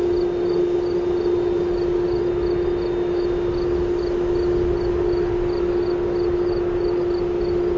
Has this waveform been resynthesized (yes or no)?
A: no